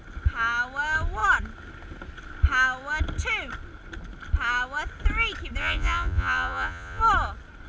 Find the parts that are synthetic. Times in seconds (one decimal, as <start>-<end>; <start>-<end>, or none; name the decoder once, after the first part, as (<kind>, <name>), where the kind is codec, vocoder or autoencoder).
5.6-7.0 (vocoder, Vocos)